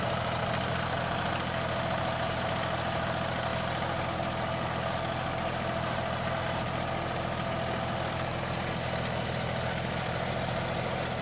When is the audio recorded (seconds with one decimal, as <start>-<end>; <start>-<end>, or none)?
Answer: 0.0-11.2

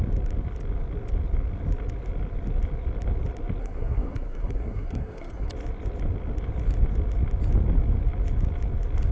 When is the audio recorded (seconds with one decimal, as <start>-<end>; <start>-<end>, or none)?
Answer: 0.0-3.6; 5.5-9.1

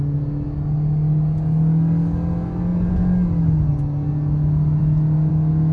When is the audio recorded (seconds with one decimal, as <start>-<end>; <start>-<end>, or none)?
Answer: 0.0-5.7

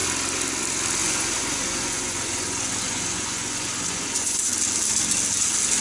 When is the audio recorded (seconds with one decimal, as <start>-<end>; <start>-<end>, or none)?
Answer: 0.0-1.0; 4.5-5.8

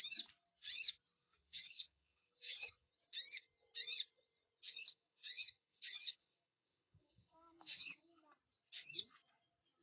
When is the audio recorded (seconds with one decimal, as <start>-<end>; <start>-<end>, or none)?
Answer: 0.0-1.2; 2.9-4.8; 8.2-9.8

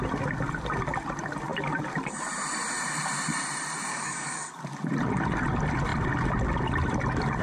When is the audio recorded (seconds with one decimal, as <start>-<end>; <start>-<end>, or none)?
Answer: 0.0-3.9; 4.6-7.4

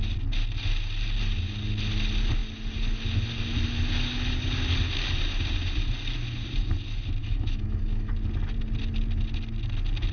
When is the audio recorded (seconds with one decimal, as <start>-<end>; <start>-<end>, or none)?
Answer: 0.0-7.2; 8.1-10.1